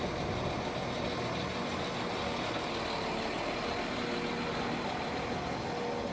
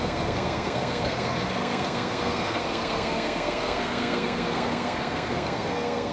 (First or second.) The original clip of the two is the first